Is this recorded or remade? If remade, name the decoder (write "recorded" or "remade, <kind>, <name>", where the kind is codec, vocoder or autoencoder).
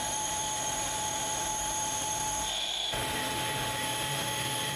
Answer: remade, autoencoder, DAC-VAE